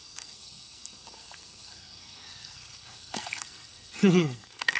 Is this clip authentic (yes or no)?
no